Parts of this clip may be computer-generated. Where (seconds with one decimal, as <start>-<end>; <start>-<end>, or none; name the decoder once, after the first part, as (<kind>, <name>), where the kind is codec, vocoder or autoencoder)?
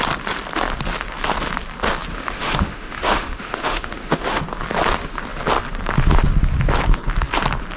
2.1-4.4 (autoencoder, DAC-VAE)